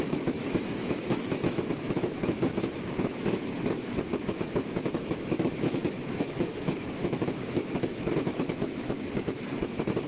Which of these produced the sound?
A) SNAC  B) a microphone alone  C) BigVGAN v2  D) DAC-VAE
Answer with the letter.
D